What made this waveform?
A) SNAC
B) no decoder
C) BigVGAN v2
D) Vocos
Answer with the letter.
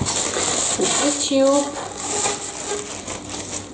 B